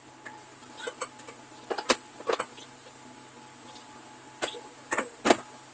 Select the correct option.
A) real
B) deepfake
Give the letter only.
A